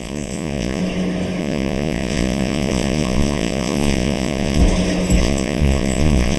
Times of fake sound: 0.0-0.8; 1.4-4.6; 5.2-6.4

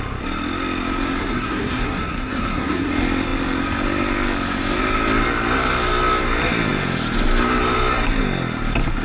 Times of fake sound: 1.2-2.9

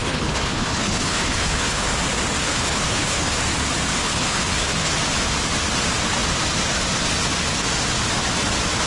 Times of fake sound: 0.0-1.9; 2.4-3.4; 3.9-4.9

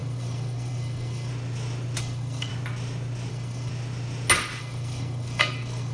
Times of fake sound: 0.0-1.3; 2.0-2.5; 3.3-3.7; 4.6-5.9

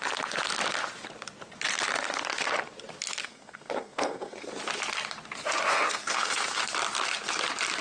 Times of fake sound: 3.2-4.5; 5.7-6.6

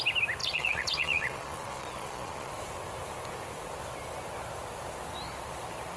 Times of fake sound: 0.4-2.5